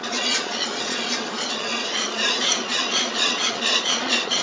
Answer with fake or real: fake